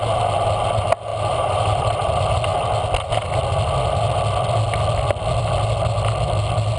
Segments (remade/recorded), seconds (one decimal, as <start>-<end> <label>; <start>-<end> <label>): 0.0-1.1 recorded; 1.1-1.8 remade; 1.8-6.8 recorded